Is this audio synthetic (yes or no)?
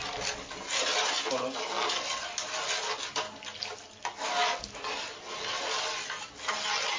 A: no